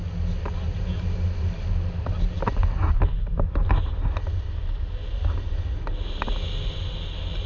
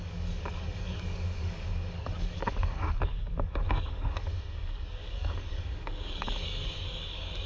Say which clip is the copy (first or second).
second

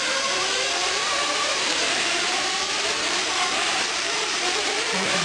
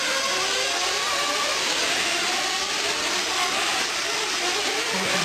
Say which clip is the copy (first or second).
first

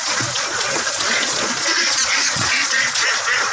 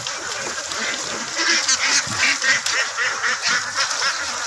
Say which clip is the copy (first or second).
first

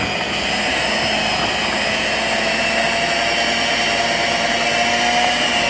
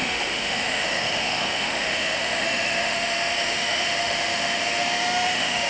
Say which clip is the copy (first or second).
second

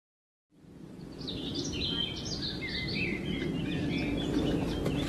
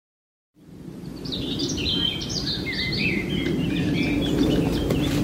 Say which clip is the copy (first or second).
second